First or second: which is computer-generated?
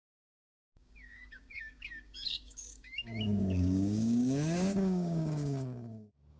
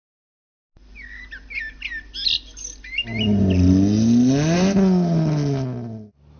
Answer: first